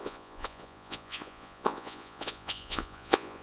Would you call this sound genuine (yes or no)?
no